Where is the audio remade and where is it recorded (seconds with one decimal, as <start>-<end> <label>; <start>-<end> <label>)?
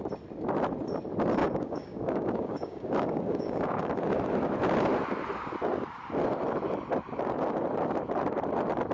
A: 0.0-1.4 recorded; 1.4-3.9 remade; 3.9-8.9 recorded